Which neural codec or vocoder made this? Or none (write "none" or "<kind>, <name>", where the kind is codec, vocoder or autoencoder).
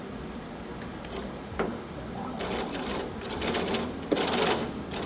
none